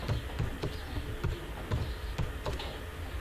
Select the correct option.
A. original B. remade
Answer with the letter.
A